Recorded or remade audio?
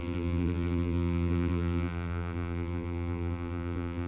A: remade